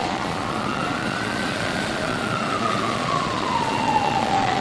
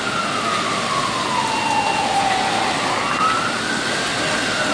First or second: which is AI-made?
first